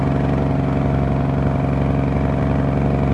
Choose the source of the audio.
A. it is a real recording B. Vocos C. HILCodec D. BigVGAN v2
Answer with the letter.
A